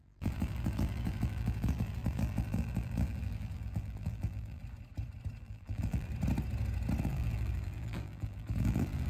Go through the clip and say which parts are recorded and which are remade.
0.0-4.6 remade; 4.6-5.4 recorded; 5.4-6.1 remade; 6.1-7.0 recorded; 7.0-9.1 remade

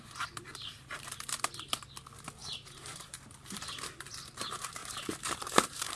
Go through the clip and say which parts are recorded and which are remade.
0.0-0.5 recorded; 0.5-1.1 remade; 1.1-2.4 recorded; 2.4-4.1 remade; 4.1-4.8 recorded; 4.8-6.0 remade

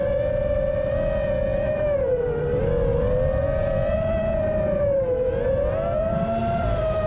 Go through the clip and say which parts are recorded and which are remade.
0.0-1.5 recorded; 1.5-2.6 remade; 2.6-3.6 recorded; 3.6-4.1 remade; 4.1-7.1 recorded

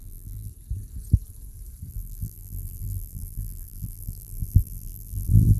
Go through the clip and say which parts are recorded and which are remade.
0.0-0.5 remade; 0.5-1.9 recorded; 1.9-5.6 remade

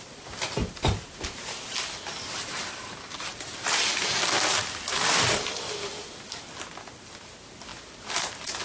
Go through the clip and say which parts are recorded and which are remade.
0.0-0.6 recorded; 0.6-1.6 remade; 1.6-7.7 recorded; 7.7-8.6 remade

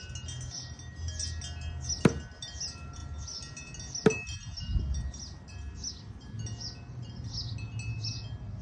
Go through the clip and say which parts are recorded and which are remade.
0.0-8.6 recorded